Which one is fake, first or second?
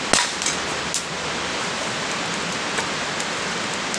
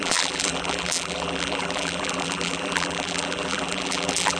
second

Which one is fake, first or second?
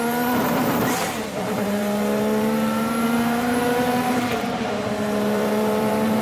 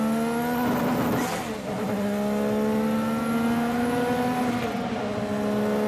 first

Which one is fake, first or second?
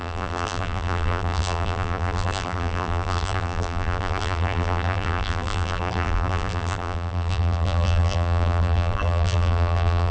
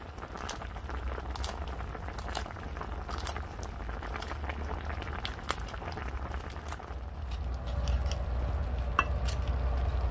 first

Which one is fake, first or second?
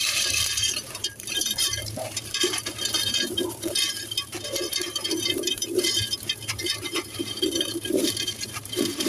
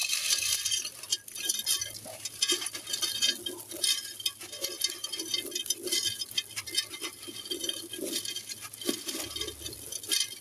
first